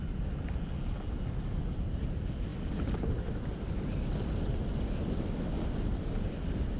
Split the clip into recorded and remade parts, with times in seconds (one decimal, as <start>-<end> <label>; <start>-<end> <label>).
0.0-6.8 recorded